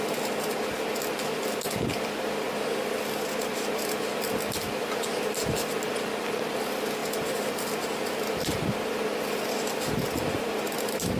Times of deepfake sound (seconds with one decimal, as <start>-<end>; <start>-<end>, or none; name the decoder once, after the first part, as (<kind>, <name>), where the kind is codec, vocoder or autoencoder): 7.0-9.9 (vocoder, BigVGAN v2)